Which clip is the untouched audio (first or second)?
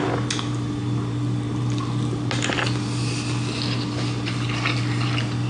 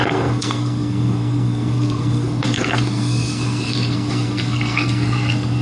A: first